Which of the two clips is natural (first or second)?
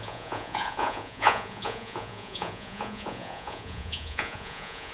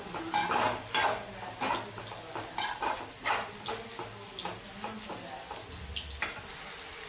second